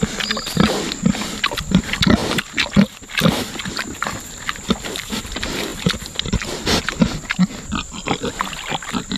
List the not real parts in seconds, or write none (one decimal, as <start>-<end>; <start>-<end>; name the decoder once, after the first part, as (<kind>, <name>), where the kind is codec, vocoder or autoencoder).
none

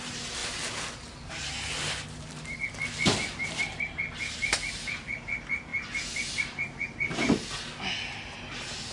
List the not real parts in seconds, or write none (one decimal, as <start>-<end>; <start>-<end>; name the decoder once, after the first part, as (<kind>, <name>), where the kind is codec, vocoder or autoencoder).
none

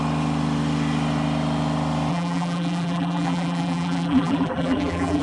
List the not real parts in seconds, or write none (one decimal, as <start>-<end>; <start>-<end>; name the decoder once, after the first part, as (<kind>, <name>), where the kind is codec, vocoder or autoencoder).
2.1-5.2 (vocoder, BigVGAN v2)

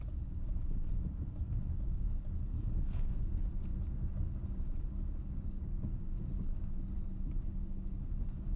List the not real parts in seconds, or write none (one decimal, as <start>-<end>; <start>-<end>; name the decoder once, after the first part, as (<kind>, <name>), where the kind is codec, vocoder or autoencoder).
2.5-3.2 (codec, SNAC)